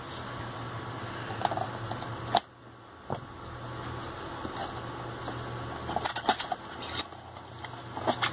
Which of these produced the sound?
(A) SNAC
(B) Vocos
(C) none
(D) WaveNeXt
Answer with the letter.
C